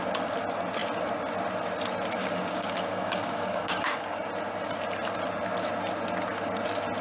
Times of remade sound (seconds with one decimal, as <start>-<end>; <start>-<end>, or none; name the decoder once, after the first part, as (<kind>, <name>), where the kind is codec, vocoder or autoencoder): 2.2-4.2 (codec, DAC)